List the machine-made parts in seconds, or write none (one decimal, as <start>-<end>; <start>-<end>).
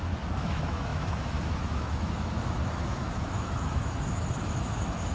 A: 0.0-5.1